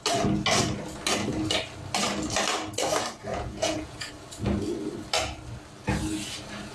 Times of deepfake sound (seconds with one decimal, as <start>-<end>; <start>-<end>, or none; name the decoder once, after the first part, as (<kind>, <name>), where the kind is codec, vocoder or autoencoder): 3.3-4.1 (vocoder, Vocos)